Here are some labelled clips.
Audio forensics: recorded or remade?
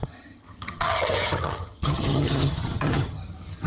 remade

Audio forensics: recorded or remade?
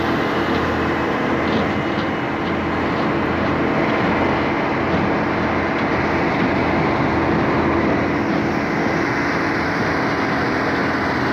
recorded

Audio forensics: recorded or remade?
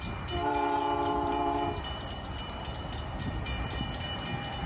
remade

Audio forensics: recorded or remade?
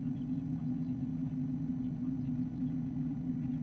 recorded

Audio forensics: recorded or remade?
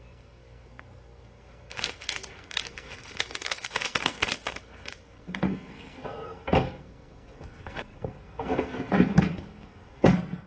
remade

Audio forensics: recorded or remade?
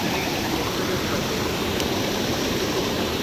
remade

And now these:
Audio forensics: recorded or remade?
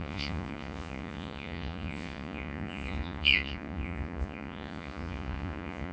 remade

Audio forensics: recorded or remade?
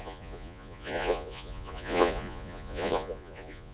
remade